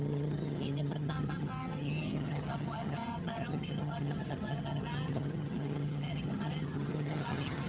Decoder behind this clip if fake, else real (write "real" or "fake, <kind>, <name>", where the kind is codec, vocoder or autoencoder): fake, vocoder, HiFi-GAN